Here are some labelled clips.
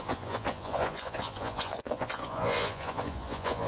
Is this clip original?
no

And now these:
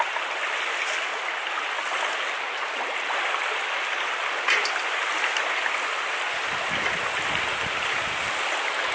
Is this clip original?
yes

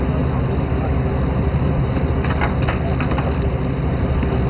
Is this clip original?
yes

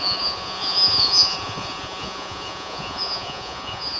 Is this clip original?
no